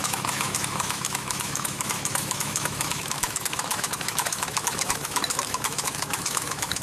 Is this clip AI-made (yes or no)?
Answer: yes